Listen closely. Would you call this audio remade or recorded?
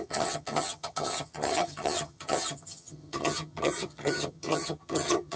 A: remade